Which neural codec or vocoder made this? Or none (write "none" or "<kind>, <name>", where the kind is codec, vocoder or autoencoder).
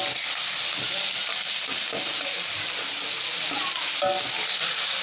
none